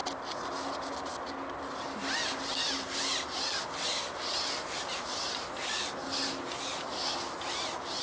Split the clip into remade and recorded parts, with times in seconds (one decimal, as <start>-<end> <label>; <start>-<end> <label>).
0.0-8.0 recorded